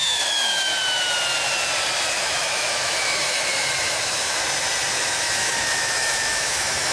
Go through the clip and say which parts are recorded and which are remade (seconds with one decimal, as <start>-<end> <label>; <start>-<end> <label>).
0.0-0.7 remade; 0.7-2.1 recorded; 2.1-4.4 remade; 4.4-4.9 recorded; 4.9-6.9 remade